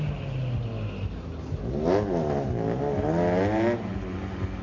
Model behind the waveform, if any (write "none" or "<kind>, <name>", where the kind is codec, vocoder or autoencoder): none